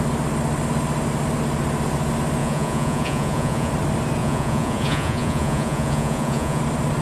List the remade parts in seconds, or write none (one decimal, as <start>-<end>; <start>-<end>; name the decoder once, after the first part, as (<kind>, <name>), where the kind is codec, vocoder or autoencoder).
2.4-3.7 (vocoder, Vocos); 4.2-6.6